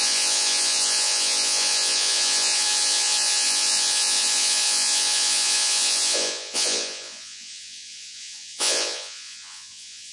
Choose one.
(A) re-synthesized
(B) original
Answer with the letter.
A